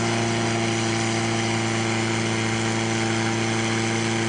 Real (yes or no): yes